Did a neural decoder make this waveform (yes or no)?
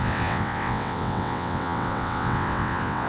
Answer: yes